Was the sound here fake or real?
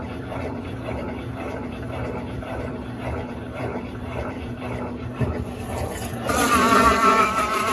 fake